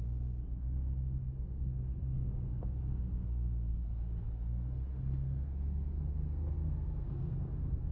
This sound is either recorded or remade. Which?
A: remade